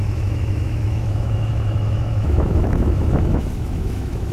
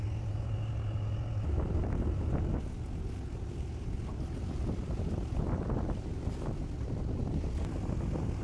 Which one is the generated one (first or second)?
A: first